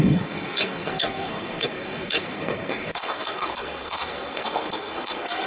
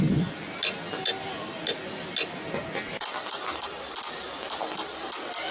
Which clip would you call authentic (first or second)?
second